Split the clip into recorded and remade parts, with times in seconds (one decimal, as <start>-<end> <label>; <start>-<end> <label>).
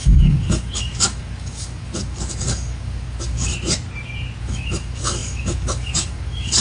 0.0-3.5 remade; 3.5-4.4 recorded; 4.4-6.6 remade